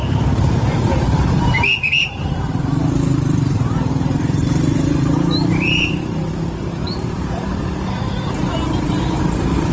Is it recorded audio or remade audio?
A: remade